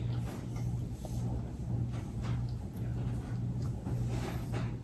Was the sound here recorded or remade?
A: recorded